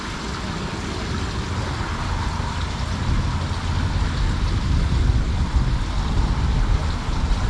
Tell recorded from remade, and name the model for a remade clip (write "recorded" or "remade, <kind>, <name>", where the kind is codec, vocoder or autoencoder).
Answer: recorded